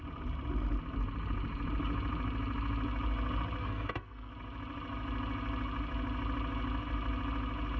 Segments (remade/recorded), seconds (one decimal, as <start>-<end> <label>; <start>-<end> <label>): 0.0-3.6 recorded; 3.6-4.3 remade; 4.3-7.8 recorded